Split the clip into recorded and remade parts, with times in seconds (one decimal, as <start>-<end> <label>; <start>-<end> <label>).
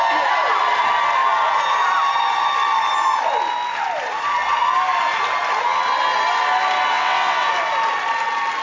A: 0.0-6.9 recorded; 6.9-7.5 remade; 7.5-8.6 recorded